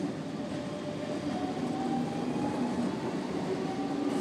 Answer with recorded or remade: recorded